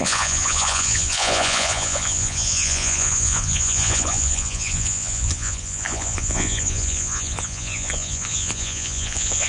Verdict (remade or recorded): remade